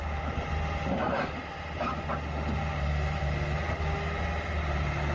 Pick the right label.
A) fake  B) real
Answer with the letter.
B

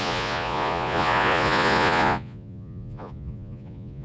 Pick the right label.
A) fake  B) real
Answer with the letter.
A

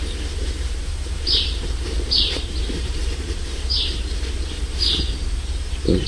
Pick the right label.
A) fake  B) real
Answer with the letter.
A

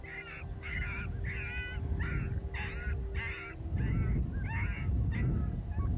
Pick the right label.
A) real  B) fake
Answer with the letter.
A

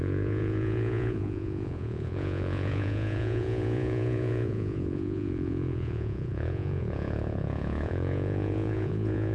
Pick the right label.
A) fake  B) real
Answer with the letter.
A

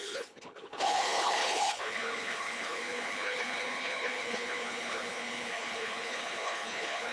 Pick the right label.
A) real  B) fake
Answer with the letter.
B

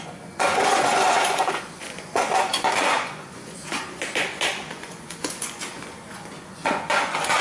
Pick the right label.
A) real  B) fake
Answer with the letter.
B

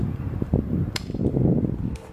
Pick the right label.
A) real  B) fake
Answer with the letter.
B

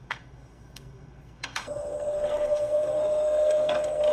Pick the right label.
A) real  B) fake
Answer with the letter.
B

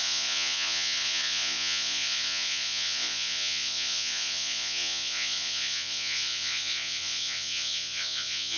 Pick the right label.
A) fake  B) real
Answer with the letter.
A